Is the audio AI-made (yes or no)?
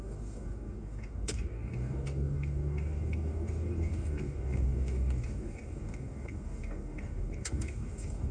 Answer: yes